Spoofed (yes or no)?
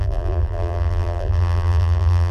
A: yes